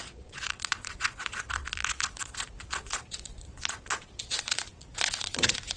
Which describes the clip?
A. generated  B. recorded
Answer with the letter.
A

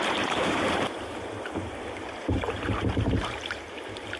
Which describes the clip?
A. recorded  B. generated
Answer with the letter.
B